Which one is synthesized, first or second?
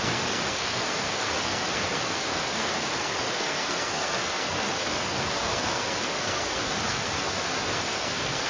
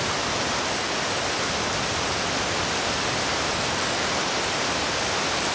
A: first